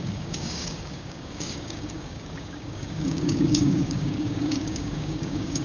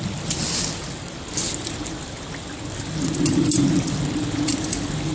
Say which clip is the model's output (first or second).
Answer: first